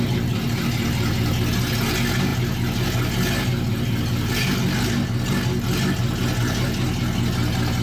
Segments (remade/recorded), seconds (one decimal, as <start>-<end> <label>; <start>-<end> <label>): 0.0-6.4 recorded; 6.4-7.0 remade; 7.0-7.8 recorded